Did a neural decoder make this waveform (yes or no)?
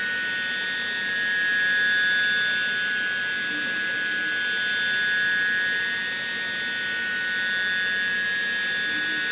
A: no